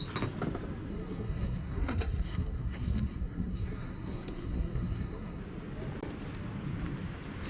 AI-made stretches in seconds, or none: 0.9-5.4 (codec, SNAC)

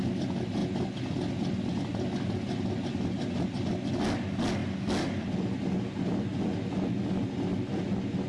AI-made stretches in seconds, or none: none